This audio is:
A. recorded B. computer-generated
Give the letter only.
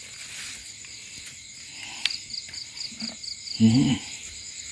A